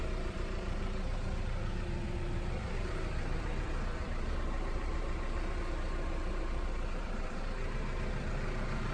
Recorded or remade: remade